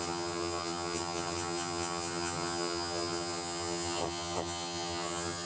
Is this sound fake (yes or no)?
yes